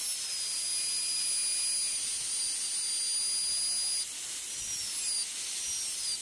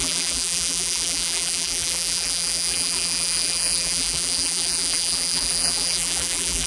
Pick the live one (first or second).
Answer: first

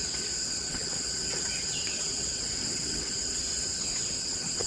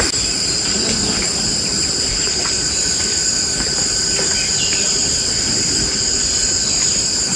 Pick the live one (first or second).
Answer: second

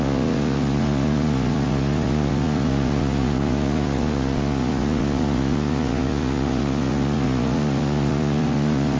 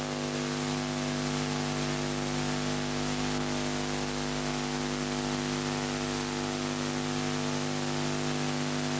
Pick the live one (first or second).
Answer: second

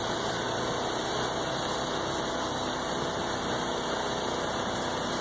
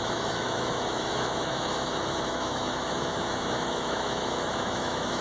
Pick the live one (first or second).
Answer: first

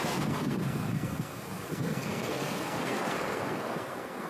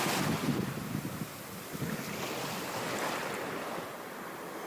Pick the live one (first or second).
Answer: second